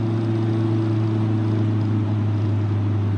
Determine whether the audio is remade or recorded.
recorded